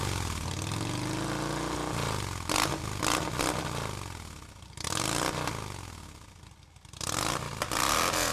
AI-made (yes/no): no